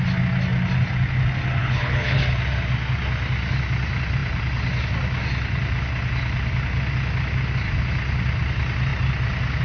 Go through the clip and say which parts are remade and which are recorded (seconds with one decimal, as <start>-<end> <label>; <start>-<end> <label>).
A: 0.0-1.6 recorded; 1.6-2.2 remade; 2.2-9.6 recorded